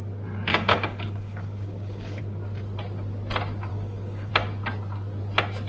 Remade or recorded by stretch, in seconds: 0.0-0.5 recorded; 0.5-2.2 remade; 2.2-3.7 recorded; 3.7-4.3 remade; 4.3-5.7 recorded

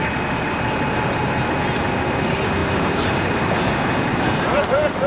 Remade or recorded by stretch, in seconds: 0.0-2.6 recorded; 2.6-3.5 remade; 3.5-4.1 recorded; 4.1-5.1 remade

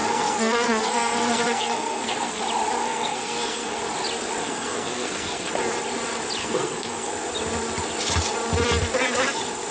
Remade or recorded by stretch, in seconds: 0.0-2.4 remade; 2.4-2.8 recorded; 2.8-3.8 remade; 3.8-4.4 recorded; 4.4-5.5 remade; 5.5-6.4 recorded; 6.4-7.1 remade; 7.1-9.7 recorded

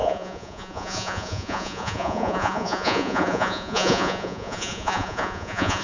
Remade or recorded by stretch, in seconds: 0.0-5.8 remade

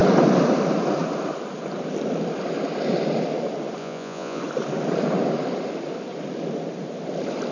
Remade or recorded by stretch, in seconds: 0.0-3.8 recorded; 3.8-4.4 remade; 4.4-7.5 recorded

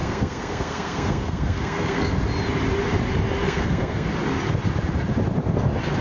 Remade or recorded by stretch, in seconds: 0.0-2.2 remade; 2.2-3.4 recorded; 3.4-4.1 remade; 4.1-6.0 recorded